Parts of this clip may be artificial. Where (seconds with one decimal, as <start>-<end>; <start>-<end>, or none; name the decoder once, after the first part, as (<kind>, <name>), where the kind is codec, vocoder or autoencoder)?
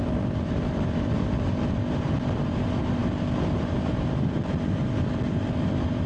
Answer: none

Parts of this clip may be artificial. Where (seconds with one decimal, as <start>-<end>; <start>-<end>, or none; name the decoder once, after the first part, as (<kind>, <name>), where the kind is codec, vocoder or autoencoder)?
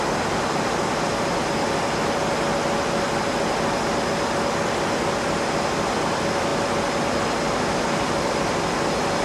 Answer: none